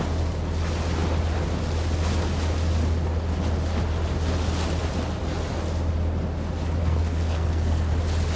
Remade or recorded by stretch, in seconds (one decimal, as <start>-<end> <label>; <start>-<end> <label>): 0.0-6.8 recorded; 6.8-7.9 remade; 7.9-8.4 recorded